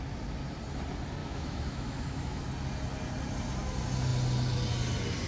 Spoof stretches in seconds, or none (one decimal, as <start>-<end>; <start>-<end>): 1.2-2.4